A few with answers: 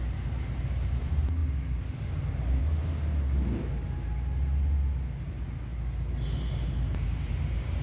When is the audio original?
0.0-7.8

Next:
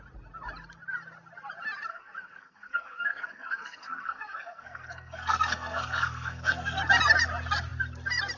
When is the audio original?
0.0-1.9; 6.8-8.4